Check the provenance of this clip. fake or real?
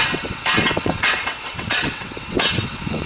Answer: fake